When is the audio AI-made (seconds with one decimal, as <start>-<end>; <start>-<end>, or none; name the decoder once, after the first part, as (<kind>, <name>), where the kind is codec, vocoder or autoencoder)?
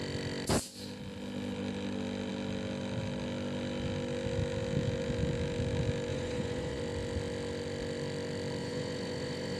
6.1-6.8 (vocoder, Vocos); 8.6-9.6